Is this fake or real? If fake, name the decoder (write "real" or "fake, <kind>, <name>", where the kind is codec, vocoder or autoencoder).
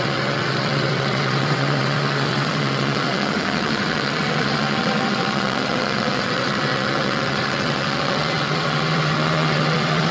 fake, vocoder, WaveNeXt